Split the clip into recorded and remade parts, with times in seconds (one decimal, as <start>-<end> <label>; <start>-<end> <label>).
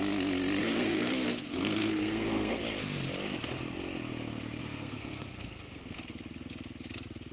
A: 0.0-0.6 recorded; 0.6-2.6 remade; 2.6-4.6 recorded; 4.6-6.0 remade; 6.0-7.3 recorded